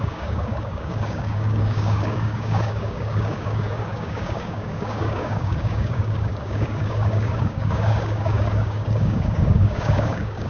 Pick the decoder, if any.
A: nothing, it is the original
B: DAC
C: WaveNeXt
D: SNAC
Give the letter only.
B